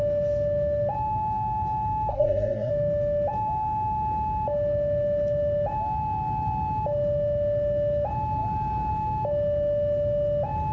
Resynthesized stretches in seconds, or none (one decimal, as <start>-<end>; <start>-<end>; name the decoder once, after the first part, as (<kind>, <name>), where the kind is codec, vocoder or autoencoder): 2.1-2.7 (codec, SNAC)

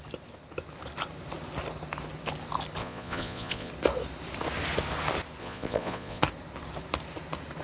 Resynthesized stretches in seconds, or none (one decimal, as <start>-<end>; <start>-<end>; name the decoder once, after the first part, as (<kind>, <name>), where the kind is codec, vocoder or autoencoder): 2.8-3.7 (vocoder, Vocos); 5.4-6.2

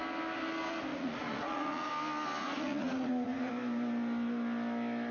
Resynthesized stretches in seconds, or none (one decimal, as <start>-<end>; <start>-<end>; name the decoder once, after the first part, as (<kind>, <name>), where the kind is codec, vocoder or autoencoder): 0.9-1.9 (vocoder, Vocos); 2.4-3.5

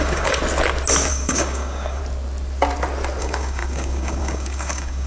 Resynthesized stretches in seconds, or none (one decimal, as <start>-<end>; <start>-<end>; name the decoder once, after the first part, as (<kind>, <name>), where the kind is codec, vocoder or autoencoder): 0.0-0.4 (codec, DAC); 1.1-2.0; 3.2-5.1

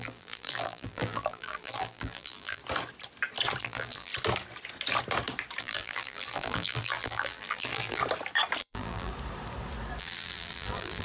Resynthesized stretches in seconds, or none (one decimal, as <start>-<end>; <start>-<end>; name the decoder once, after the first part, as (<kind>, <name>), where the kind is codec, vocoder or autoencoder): 0.0-2.6 (vocoder, BigVGAN v2); 3.6-4.1; 5.6-8.0; 8.6-9.1; 10.0-11.0

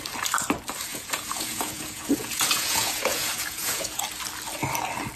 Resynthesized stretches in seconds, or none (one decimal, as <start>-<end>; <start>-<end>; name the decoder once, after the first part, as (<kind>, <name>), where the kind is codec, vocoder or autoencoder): 0.9-4.0 (vocoder, Vocos)